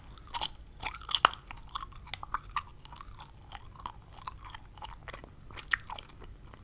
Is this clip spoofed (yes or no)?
no